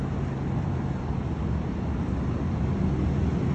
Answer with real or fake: real